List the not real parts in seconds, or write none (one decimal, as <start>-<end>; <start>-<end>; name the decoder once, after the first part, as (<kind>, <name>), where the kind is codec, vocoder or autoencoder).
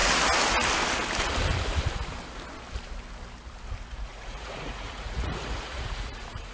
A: 3.9-6.5 (vocoder, Vocos)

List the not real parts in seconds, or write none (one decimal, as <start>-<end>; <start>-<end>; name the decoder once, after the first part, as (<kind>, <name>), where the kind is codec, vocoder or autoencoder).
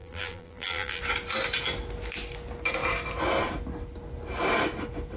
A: 0.0-1.0 (vocoder, BigVGAN v2)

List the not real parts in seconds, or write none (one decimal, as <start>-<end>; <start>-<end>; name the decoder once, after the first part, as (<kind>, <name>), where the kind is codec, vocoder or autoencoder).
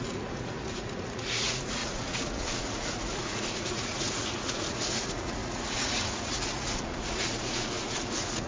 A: 0.0-8.5 (vocoder, Vocos)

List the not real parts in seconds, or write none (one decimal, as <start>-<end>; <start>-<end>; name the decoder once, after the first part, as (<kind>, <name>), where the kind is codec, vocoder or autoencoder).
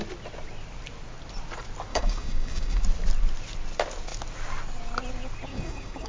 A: 1.9-2.8 (codec, DAC); 5.5-6.1